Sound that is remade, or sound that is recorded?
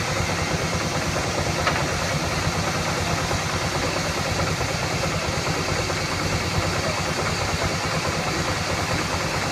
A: recorded